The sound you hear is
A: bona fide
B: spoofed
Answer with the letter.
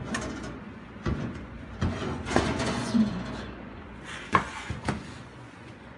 B